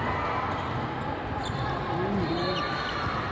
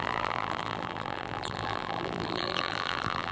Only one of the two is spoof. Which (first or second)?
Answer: second